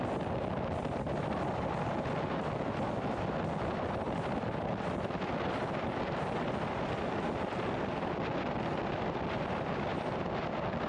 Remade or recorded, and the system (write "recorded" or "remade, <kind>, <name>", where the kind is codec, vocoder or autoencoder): recorded